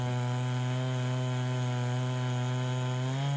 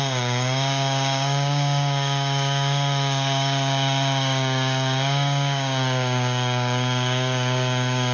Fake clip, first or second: second